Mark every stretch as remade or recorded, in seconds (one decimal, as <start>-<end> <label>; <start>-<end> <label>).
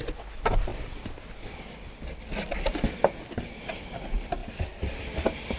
0.0-5.6 recorded